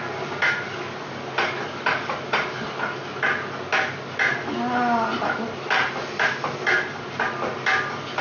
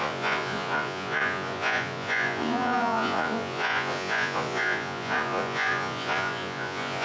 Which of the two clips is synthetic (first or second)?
second